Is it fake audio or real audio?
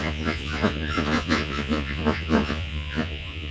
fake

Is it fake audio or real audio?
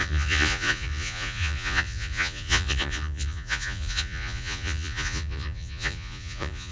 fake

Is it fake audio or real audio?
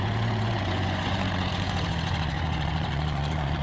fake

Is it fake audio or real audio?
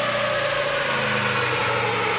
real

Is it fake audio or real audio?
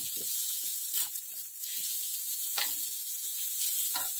fake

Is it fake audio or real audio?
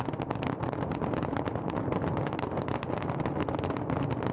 real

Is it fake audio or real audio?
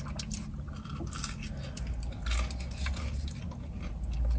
real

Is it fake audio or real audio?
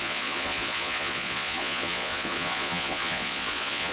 fake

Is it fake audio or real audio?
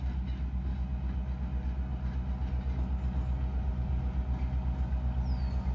real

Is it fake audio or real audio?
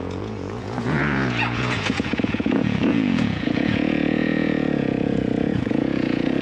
fake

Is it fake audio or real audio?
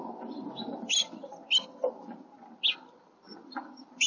real